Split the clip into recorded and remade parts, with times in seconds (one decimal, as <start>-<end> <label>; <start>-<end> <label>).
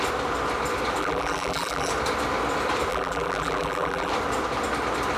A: 0.0-1.0 recorded; 1.0-1.9 remade; 1.9-2.9 recorded; 2.9-4.1 remade; 4.1-5.2 recorded